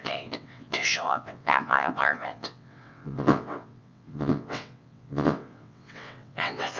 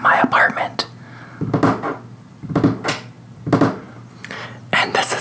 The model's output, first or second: first